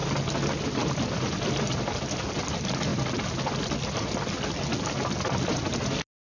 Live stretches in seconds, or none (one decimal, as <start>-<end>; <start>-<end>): 0.0-6.3